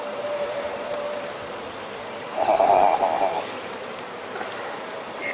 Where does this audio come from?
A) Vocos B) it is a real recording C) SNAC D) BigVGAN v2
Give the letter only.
D